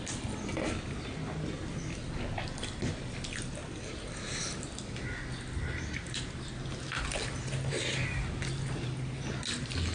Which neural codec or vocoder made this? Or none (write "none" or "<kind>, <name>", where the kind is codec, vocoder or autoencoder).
none